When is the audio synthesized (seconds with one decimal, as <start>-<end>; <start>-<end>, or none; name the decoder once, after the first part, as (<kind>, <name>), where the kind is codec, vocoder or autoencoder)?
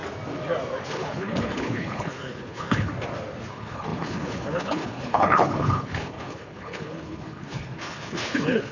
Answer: 0.9-2.9 (codec, HILCodec); 3.5-8.7